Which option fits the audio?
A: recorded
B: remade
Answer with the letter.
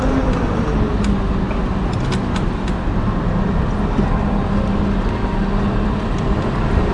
A